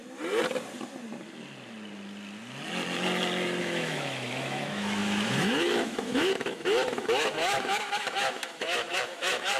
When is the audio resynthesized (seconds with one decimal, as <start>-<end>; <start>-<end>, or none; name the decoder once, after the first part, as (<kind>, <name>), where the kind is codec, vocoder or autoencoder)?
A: 3.6-9.6 (autoencoder, DAC-VAE)